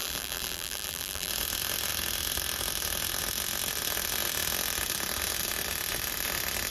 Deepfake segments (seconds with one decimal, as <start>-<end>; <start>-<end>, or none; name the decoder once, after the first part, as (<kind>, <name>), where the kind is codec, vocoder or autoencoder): 0.0-1.3 (vocoder, BigVGAN v2)